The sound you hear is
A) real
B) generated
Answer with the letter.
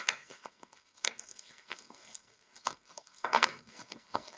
B